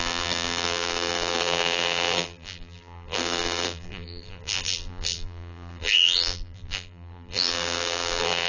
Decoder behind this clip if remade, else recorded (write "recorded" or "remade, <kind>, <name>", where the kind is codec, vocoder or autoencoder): remade, vocoder, BigVGAN v2